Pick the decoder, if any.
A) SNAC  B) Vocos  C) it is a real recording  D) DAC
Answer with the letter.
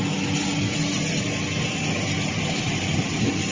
C